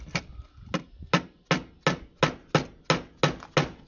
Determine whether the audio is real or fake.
real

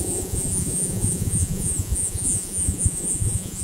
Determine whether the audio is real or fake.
fake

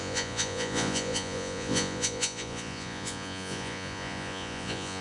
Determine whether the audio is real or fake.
fake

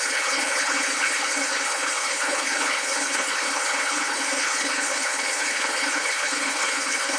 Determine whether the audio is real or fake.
fake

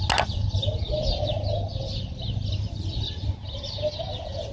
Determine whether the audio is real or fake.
real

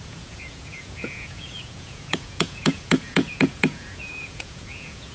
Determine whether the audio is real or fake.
fake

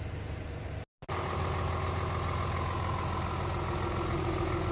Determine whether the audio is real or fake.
real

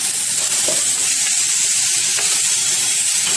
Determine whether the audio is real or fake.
real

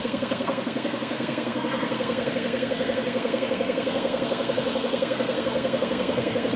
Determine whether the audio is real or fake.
fake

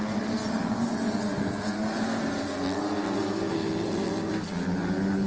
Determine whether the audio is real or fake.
real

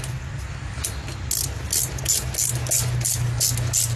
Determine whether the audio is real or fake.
real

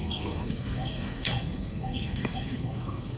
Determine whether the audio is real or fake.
fake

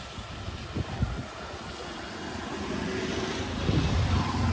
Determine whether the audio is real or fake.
real